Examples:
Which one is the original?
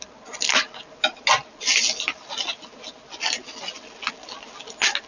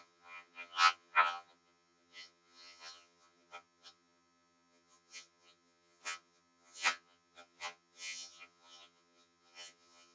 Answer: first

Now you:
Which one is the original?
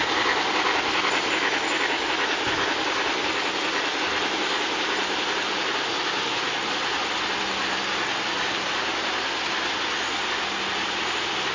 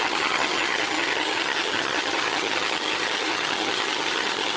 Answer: first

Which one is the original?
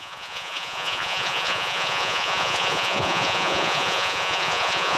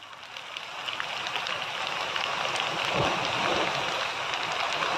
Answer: second